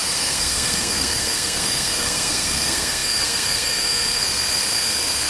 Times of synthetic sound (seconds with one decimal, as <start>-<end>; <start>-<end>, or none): 0.0-5.3